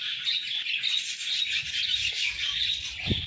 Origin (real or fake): real